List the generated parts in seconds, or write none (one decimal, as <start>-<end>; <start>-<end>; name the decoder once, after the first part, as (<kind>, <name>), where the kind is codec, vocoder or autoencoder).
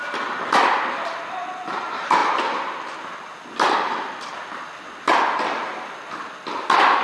none